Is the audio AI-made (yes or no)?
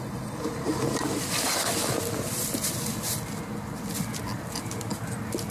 no